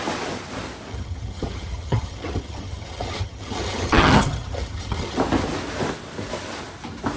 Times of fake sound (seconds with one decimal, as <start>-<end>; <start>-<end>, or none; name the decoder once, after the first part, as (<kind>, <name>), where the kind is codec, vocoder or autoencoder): 0.9-5.2 (vocoder, HiFi-GAN)